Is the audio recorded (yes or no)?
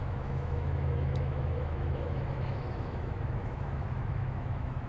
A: no